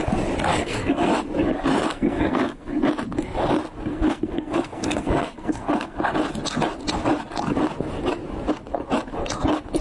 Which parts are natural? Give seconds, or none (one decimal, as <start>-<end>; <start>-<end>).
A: 0.0-0.5; 1.1-1.9; 2.7-3.9; 6.0-9.8